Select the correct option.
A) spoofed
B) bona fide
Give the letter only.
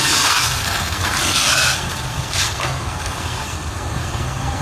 A